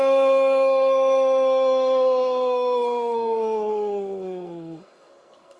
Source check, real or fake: fake